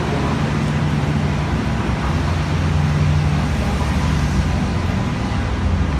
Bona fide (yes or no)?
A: yes